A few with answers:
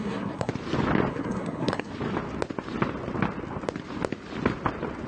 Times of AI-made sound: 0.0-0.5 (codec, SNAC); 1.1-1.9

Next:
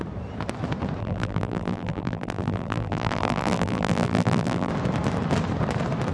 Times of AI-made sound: 1.0-4.7 (vocoder, BigVGAN v2)

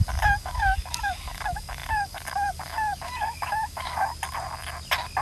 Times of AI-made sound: 0.0-4.1 (codec, DAC)

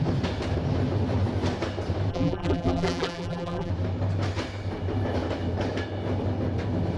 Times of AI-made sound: 2.1-3.7 (vocoder, BigVGAN v2)

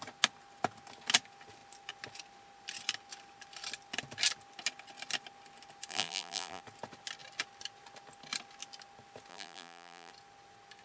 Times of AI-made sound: 5.9-6.6 (vocoder, BigVGAN v2); 9.3-10.1